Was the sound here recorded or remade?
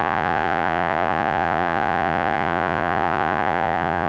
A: remade